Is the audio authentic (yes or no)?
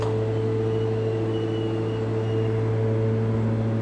yes